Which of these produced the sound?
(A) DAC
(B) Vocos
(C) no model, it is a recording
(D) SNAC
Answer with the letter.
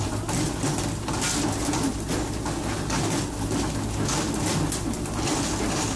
C